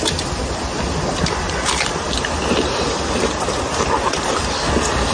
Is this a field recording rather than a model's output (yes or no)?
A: yes